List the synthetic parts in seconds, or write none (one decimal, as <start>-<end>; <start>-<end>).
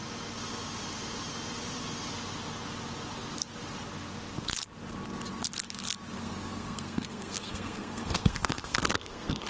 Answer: 6.2-9.5